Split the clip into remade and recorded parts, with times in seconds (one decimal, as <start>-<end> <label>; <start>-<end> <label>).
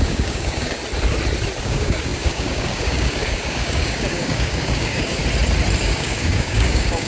0.0-0.8 remade; 0.8-1.6 recorded; 1.6-5.2 remade; 5.2-5.8 recorded; 5.8-7.1 remade